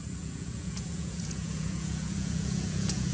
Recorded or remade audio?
remade